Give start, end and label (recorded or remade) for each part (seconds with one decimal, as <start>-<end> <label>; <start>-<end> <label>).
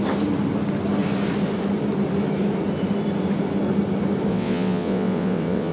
0.0-4.3 recorded; 4.3-5.7 remade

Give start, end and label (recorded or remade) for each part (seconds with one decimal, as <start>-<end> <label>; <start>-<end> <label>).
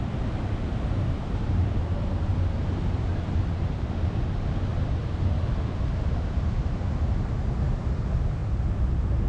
0.0-9.3 recorded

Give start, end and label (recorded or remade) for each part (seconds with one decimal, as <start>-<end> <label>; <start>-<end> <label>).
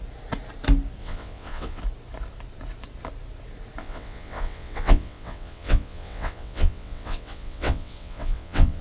0.0-1.0 recorded; 1.0-1.8 remade; 1.8-3.8 recorded; 3.8-8.8 remade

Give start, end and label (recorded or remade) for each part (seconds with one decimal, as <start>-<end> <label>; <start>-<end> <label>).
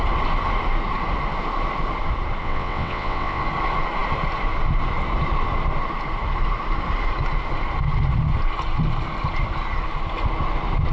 0.0-2.4 recorded; 2.4-3.4 remade; 3.4-10.9 recorded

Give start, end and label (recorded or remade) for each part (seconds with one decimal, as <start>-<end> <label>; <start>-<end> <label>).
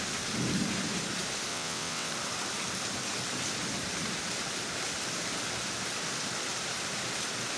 0.0-1.5 recorded; 1.5-2.1 remade; 2.1-7.6 recorded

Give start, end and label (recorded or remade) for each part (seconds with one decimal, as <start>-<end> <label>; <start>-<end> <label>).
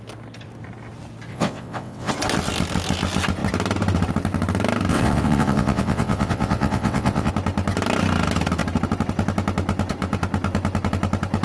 0.0-1.3 recorded; 1.3-2.1 remade; 2.1-4.9 recorded; 4.9-7.3 remade; 7.3-11.4 recorded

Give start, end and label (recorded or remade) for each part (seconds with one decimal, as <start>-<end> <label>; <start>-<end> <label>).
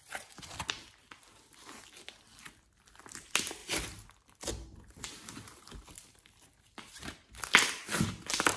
0.0-8.6 recorded